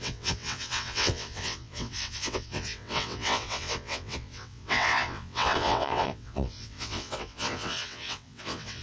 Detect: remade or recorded remade